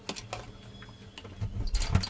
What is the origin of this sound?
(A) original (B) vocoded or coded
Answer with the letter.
A